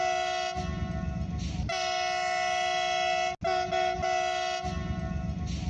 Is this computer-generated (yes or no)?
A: no